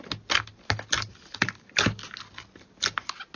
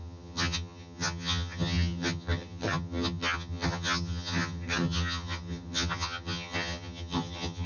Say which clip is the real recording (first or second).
first